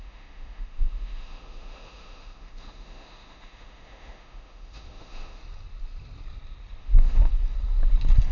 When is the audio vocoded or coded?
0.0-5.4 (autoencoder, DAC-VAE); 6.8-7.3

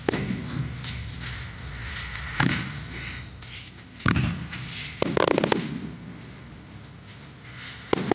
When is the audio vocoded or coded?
none

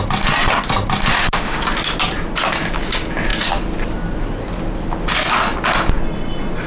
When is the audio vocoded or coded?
1.1-1.6 (autoencoder, DAC-VAE)

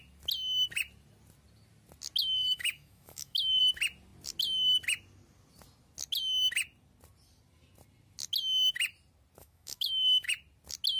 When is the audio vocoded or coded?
2.2-3.6 (autoencoder, DAC-VAE); 9.4-10.3

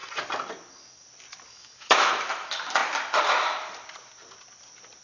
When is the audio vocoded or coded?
1.5-2.1 (autoencoder, DAC-VAE)

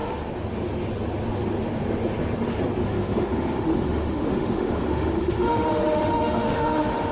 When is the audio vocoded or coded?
2.8-7.1 (autoencoder, DAC-VAE)